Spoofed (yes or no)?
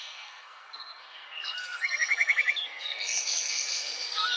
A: yes